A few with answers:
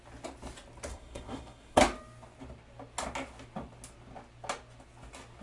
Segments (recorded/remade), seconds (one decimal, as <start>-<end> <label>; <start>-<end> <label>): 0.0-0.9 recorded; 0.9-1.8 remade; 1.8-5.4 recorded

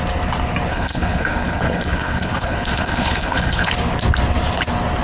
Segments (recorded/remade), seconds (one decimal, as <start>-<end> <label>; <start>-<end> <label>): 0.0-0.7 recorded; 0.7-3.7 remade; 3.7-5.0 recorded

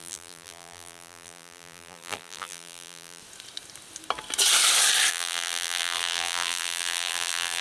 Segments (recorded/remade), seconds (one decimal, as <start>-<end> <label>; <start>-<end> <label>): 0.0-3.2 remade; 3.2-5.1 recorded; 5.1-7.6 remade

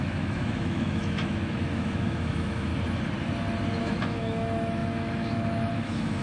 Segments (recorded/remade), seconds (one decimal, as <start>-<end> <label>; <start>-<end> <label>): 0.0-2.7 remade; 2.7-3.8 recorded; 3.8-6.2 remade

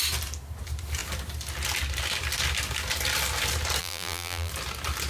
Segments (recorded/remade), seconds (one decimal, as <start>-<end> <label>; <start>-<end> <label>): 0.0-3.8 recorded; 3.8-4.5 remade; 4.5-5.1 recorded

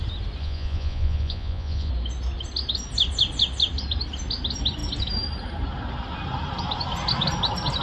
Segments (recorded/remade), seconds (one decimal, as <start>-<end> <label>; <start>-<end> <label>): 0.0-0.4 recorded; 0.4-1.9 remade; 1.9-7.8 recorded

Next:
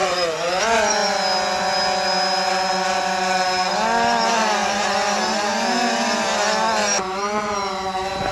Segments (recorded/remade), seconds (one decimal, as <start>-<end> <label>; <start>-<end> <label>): 0.0-8.3 recorded

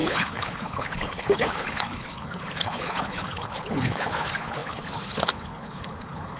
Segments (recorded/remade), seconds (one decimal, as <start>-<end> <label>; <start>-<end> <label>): 0.0-6.4 remade